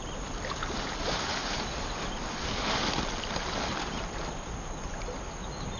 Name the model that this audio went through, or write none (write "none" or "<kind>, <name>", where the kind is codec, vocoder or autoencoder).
none